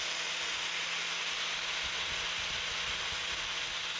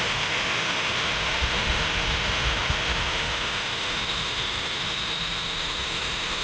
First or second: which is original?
first